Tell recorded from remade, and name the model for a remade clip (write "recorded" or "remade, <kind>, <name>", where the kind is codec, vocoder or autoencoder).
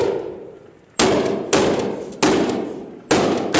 recorded